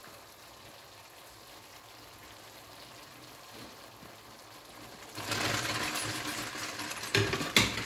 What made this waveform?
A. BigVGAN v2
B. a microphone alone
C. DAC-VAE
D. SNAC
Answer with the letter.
B